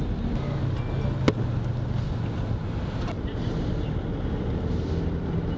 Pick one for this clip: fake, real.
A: real